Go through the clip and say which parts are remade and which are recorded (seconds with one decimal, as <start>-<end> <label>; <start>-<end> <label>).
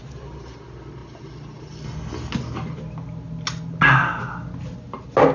0.0-5.3 recorded